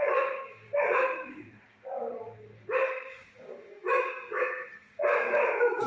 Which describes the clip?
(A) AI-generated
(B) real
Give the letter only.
A